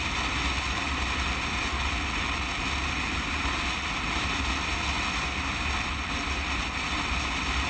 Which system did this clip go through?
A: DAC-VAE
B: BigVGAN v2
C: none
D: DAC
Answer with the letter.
C